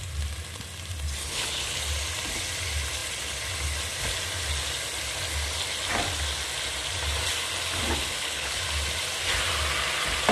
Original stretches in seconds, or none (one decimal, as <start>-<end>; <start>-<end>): 0.0-1.2; 1.8-8.1; 8.6-10.3